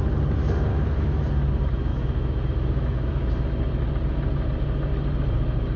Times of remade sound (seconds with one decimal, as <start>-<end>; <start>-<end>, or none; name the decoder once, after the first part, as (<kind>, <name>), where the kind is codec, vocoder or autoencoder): 0.7-1.3 (autoencoder, DAC-VAE); 1.9-3.3